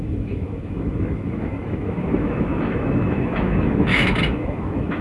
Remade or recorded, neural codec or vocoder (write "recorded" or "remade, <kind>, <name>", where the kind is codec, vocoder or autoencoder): remade, autoencoder, DAC-VAE